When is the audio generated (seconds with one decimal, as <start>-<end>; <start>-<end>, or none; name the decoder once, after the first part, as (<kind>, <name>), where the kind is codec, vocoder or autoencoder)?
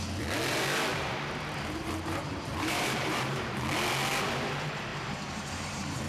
0.9-3.5 (vocoder, BigVGAN v2); 4.9-6.1